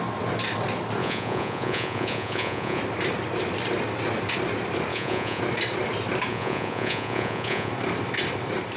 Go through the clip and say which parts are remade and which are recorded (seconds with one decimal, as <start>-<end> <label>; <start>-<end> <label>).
0.0-1.0 recorded; 1.0-2.8 remade; 2.8-4.9 recorded; 4.9-5.4 remade; 5.4-6.3 recorded; 6.3-7.7 remade; 7.7-8.8 recorded